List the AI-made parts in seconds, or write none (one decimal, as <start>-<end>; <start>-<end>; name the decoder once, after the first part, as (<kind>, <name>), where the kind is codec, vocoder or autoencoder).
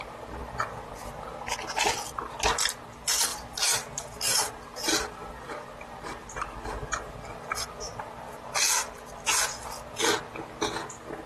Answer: 3.3-5.3 (vocoder, BigVGAN v2); 6.2-7.5